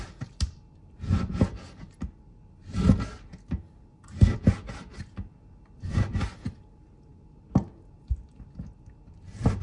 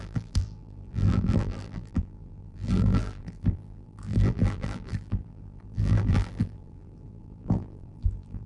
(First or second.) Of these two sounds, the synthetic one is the second